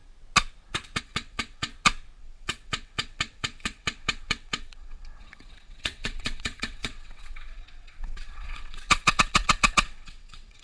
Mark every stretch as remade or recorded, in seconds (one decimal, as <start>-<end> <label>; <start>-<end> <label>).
0.0-1.0 recorded; 1.0-1.7 remade; 1.7-2.2 recorded; 2.2-10.6 remade